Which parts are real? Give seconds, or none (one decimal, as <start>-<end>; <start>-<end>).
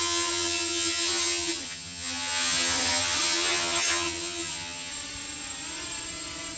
4.9-6.6